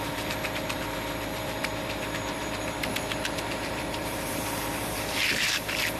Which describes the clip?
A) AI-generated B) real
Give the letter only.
A